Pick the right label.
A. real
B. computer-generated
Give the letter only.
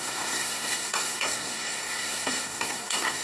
B